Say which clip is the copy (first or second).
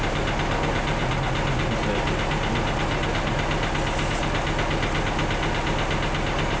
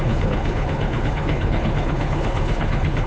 second